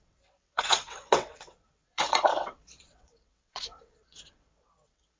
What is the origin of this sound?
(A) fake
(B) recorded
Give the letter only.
A